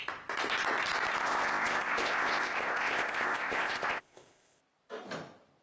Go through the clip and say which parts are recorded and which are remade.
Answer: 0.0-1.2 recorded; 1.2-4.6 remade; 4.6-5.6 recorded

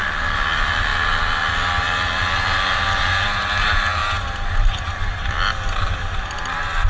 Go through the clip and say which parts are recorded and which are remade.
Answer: 0.0-6.9 recorded

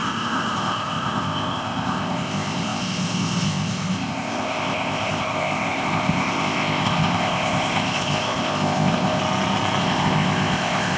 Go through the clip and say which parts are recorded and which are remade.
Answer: 0.0-9.2 remade; 9.2-9.8 recorded; 9.8-11.0 remade

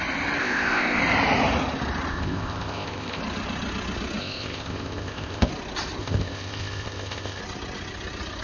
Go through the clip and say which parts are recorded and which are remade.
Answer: 0.0-0.4 recorded; 0.4-1.0 remade; 1.0-2.1 recorded; 2.1-3.2 remade; 3.2-4.2 recorded; 4.2-5.5 remade; 5.5-6.0 recorded; 6.0-7.4 remade; 7.4-8.4 recorded

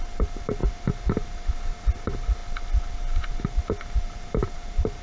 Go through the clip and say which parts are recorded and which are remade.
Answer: 0.0-5.0 recorded

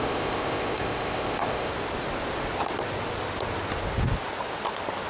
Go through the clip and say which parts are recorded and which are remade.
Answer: 0.0-1.7 remade; 1.7-5.1 recorded

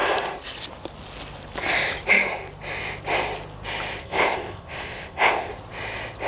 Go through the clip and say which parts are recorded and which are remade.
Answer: 0.0-4.0 recorded; 4.0-5.5 remade; 5.5-6.3 recorded

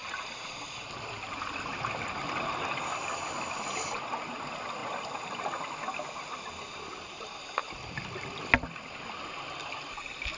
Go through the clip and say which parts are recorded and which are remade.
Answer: 0.0-10.4 recorded